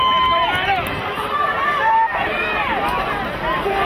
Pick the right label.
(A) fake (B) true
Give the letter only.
B